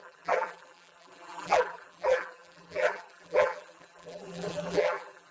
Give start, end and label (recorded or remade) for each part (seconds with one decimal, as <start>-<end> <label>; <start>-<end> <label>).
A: 0.0-5.3 remade